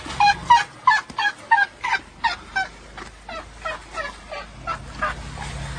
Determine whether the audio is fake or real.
real